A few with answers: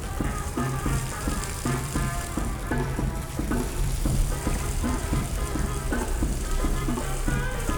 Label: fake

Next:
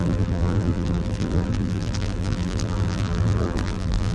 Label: fake